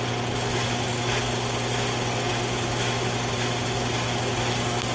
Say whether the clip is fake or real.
real